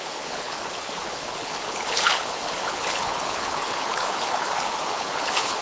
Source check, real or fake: fake